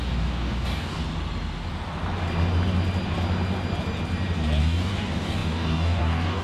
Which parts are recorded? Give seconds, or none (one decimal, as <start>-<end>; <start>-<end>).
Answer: 1.0-4.6